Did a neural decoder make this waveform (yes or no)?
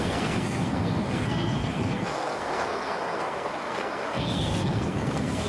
yes